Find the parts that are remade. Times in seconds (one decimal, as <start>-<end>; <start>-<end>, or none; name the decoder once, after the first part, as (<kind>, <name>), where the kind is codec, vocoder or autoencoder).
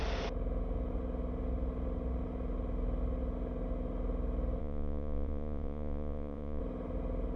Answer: 4.6-6.6 (vocoder, Vocos)